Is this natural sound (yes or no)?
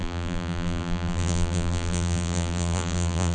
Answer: no